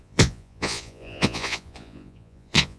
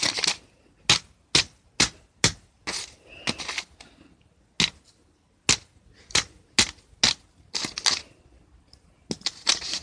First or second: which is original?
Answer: second